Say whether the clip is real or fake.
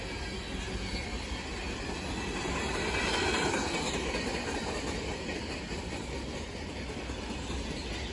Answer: real